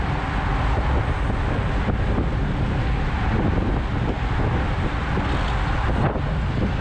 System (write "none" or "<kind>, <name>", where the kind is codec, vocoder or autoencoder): none